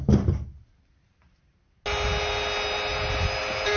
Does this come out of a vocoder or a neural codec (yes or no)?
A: no